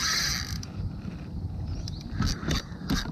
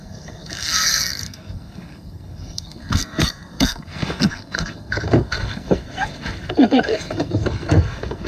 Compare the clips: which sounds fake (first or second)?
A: second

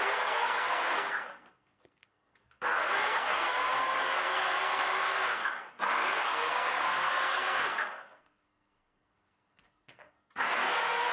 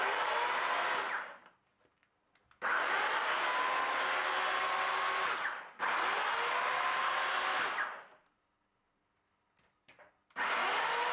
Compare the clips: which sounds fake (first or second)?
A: first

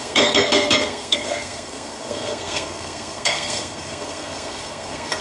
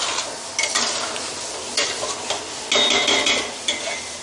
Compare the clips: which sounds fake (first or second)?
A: first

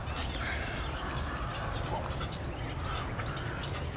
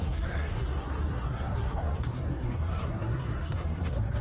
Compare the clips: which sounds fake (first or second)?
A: second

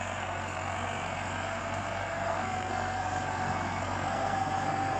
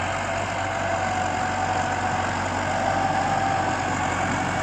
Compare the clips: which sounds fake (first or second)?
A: first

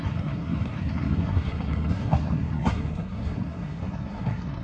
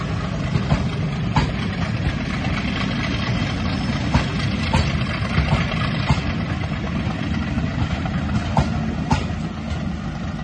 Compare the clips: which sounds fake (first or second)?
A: first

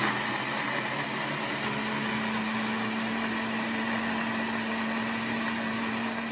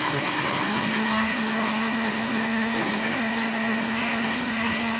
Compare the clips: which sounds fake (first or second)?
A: second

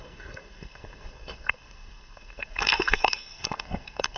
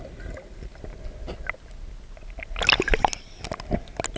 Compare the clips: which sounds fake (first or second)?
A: first